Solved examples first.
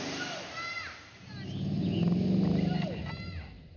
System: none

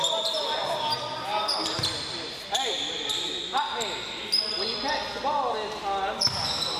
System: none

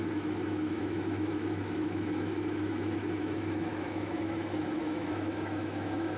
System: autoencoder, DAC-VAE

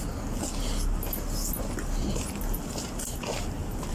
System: none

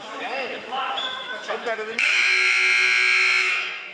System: autoencoder, DAC-VAE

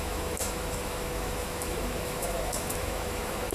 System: autoencoder, DAC-VAE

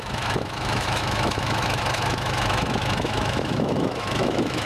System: autoencoder, DAC-VAE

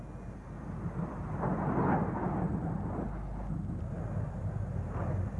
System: none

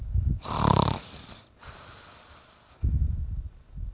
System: none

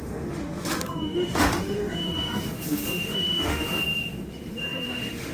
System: autoencoder, DAC-VAE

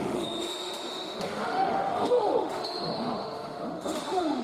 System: autoencoder, DAC-VAE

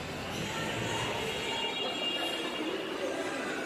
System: none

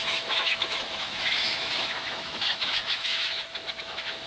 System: autoencoder, DAC-VAE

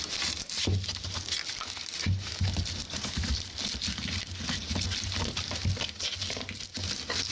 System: none